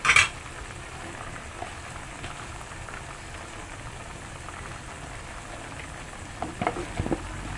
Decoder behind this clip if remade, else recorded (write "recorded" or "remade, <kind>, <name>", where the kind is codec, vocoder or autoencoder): recorded